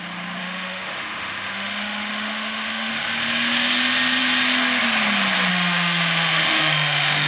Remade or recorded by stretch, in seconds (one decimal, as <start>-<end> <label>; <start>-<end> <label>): 0.0-0.4 recorded; 0.4-2.9 remade; 2.9-5.5 recorded; 5.5-7.3 remade